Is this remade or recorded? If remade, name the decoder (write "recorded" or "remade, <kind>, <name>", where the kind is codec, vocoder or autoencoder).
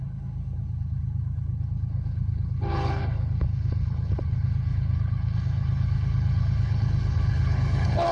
remade, codec, HILCodec